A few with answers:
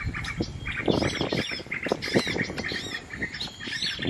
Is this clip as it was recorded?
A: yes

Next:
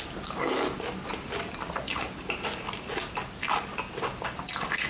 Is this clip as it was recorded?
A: yes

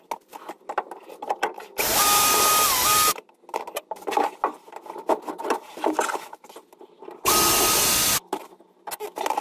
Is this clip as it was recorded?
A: yes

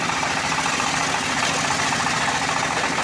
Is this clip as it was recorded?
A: yes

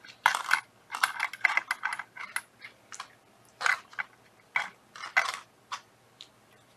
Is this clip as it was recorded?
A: yes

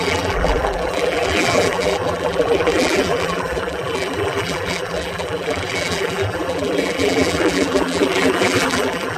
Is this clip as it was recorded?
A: no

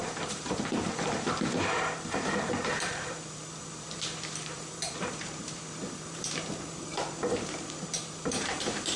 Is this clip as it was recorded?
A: no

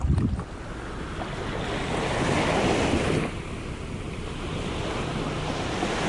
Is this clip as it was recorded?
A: yes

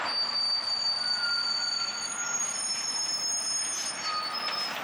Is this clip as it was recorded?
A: yes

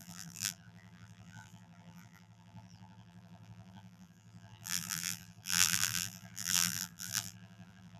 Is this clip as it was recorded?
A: no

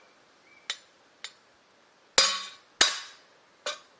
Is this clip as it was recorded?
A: yes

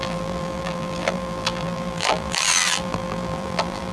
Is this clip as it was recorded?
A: no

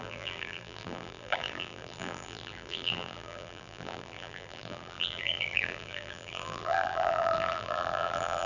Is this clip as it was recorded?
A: no